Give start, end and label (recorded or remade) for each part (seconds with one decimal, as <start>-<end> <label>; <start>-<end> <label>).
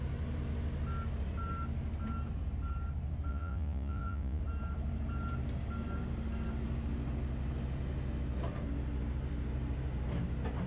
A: 0.0-3.3 recorded; 3.3-4.4 remade; 4.4-10.7 recorded